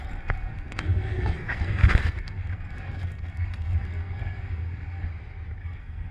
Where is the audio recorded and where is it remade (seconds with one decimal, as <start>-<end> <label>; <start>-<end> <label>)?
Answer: 0.0-5.1 remade; 5.1-5.6 recorded; 5.6-6.1 remade